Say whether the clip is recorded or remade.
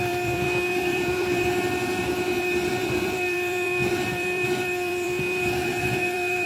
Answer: remade